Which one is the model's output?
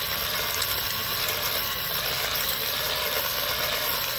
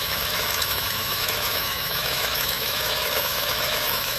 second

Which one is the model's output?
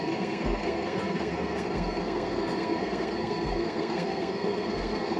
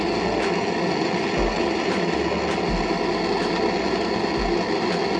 first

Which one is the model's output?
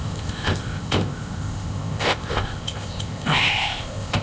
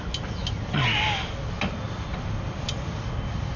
first